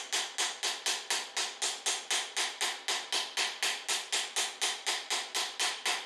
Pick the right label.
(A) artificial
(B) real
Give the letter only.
B